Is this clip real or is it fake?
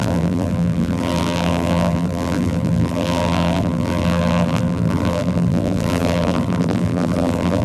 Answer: fake